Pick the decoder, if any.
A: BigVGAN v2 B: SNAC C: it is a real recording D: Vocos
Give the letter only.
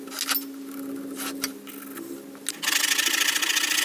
C